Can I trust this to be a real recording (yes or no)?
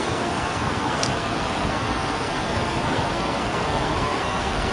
no